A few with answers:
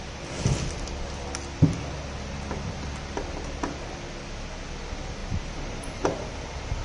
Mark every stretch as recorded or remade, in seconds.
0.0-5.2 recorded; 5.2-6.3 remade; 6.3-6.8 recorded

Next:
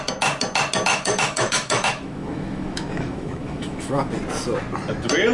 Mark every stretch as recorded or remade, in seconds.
0.0-0.9 recorded; 0.9-4.1 remade; 4.1-5.3 recorded

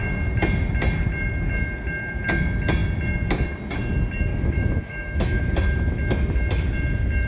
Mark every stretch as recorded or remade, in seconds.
0.0-4.3 recorded; 4.3-5.4 remade; 5.4-7.3 recorded

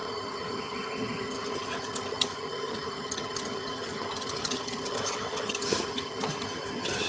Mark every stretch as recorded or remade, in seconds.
0.0-7.1 remade